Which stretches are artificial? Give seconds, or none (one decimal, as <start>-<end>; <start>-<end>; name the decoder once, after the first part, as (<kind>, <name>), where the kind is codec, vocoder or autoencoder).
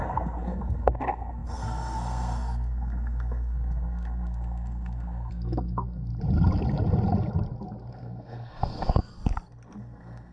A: 0.0-6.1 (codec, SNAC); 7.9-9.1; 9.8-10.3